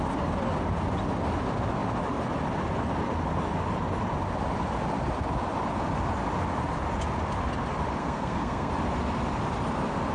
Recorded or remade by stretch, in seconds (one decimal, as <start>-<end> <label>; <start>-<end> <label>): 0.0-8.0 recorded; 8.0-8.7 remade; 8.7-10.1 recorded

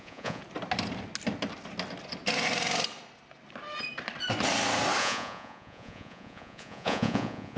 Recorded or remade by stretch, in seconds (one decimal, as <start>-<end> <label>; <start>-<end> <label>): 0.0-0.4 remade; 0.4-5.0 recorded; 5.0-7.6 remade

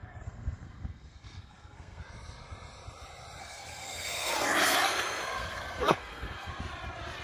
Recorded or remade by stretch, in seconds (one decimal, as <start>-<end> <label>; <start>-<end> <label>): 0.0-2.0 remade; 2.0-3.4 recorded; 3.4-6.6 remade; 6.6-7.2 recorded

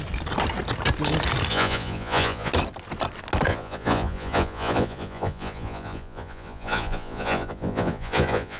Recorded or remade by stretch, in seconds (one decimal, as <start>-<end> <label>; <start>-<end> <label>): 0.0-1.5 recorded; 1.5-2.5 remade; 2.5-3.5 recorded; 3.5-8.6 remade

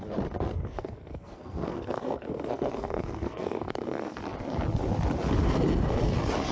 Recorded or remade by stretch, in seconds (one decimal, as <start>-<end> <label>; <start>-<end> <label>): 0.0-0.5 recorded; 0.5-4.2 remade; 4.2-6.5 recorded

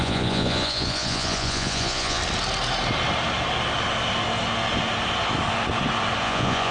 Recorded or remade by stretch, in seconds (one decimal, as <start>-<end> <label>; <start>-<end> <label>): 0.0-2.2 remade; 2.2-6.2 recorded; 6.2-6.7 remade

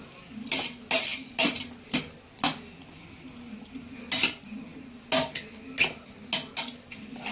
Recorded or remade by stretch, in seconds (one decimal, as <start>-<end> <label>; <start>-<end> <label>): 0.0-7.3 recorded

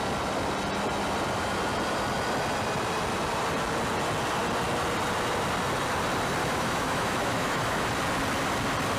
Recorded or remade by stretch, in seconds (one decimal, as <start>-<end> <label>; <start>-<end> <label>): 0.0-6.4 recorded; 6.4-7.9 remade; 7.9-9.0 recorded